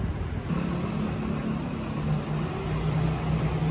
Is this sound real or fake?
real